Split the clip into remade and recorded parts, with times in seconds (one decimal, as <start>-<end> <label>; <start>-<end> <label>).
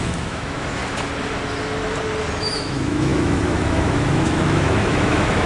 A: 0.0-0.8 remade; 0.8-2.4 recorded; 2.4-5.5 remade